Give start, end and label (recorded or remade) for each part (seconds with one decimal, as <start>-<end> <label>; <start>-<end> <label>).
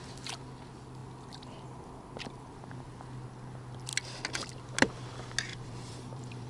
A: 0.0-5.5 recorded; 5.5-6.5 remade